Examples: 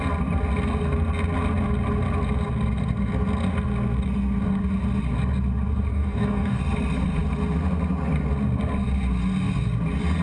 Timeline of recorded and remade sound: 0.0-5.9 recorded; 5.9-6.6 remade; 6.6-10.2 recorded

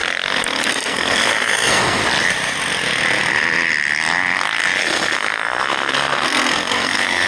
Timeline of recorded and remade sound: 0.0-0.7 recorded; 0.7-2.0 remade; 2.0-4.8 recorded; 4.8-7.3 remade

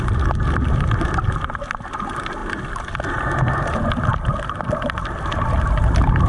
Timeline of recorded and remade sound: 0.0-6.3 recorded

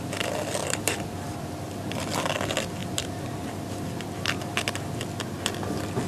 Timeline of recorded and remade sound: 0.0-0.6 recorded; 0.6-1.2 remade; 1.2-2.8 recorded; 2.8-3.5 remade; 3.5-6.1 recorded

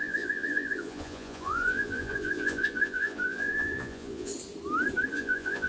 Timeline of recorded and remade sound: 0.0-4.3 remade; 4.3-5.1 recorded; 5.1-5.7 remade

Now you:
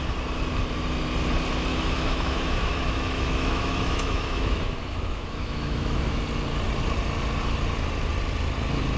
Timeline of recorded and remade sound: 0.0-1.7 recorded; 1.7-6.2 remade; 6.2-9.0 recorded

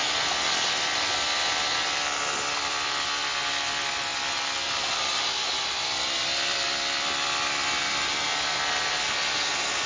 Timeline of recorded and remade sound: 0.0-9.9 recorded